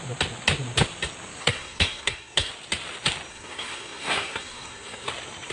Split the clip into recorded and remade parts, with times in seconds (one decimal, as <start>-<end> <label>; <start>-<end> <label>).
0.0-1.4 recorded; 1.4-2.5 remade; 2.5-3.3 recorded; 3.3-5.1 remade; 5.1-5.5 recorded